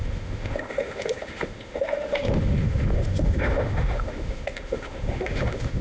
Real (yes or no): no